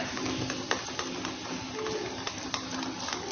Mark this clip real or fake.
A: real